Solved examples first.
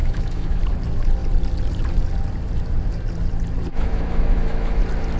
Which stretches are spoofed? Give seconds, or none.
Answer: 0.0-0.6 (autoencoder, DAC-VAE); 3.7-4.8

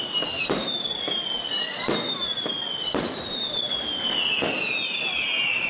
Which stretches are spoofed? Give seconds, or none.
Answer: none

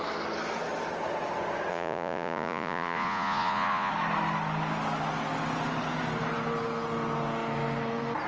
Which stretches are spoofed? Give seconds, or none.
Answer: 1.7-3.9 (vocoder, Vocos)

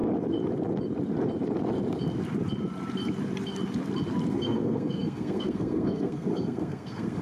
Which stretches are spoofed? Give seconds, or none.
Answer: 4.3-7.2 (codec, SNAC)

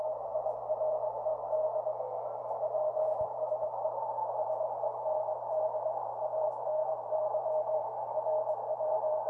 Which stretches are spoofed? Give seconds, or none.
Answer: 0.0-1.3 (vocoder, BigVGAN v2); 2.4-9.3

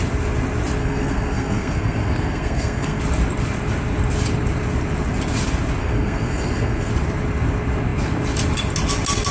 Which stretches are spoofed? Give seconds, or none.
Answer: 0.8-3.0 (codec, SNAC); 5.8-6.9